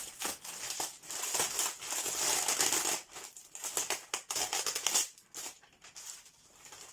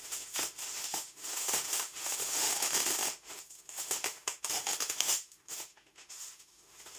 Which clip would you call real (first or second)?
first